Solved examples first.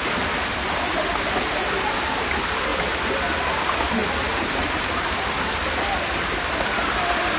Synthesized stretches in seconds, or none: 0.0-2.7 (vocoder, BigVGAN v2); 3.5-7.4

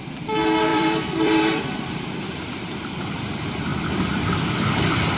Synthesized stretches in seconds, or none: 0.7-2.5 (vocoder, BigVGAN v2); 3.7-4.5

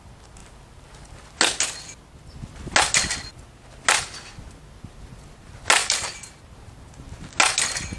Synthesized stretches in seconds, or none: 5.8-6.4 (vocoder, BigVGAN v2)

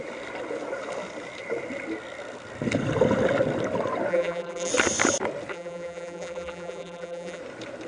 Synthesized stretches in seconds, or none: 4.1-4.7 (vocoder, BigVGAN v2); 5.5-7.4

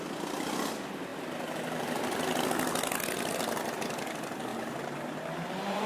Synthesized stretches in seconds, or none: 4.5-5.9 (vocoder, BigVGAN v2)